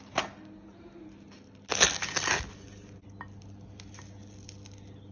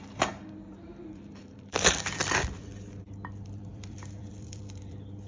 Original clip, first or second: first